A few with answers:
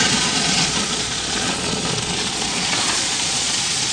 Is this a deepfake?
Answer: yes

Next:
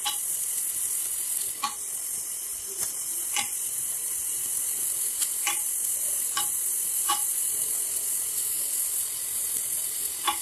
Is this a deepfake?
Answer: no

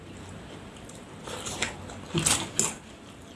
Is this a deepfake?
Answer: no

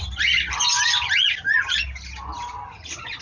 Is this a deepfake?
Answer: no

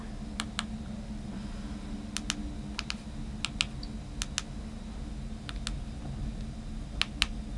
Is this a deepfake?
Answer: no